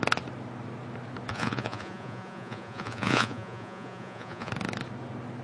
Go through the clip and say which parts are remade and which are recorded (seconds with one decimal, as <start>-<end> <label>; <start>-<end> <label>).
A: 0.0-1.3 recorded; 1.3-4.5 remade; 4.5-5.4 recorded